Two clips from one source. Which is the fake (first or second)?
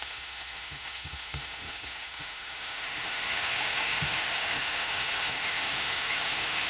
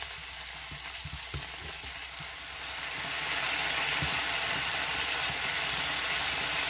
first